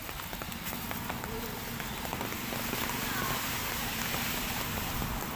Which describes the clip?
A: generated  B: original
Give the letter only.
B